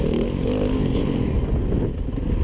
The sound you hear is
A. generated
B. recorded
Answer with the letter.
B